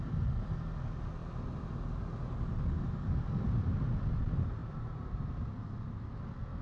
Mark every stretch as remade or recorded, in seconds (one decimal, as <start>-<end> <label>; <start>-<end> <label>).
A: 0.0-1.2 recorded; 1.2-3.6 remade; 3.6-4.6 recorded; 4.6-5.3 remade; 5.3-6.6 recorded